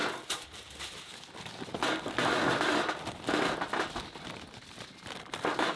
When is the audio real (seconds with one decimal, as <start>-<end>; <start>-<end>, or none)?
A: 0.0-5.8

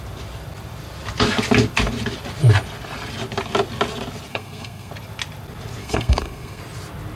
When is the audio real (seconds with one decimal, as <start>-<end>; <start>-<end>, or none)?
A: 0.0-4.3; 4.9-5.8; 6.6-7.2

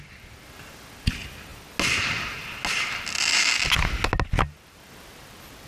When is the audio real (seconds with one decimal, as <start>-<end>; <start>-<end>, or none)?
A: 0.0-5.7